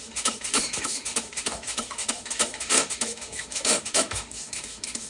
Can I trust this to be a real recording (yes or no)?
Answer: no